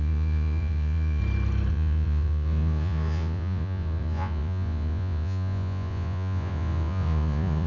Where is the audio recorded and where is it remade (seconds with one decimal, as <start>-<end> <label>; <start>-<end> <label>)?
0.0-1.2 remade; 1.2-1.7 recorded; 1.7-7.7 remade